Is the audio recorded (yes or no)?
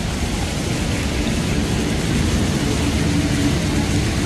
yes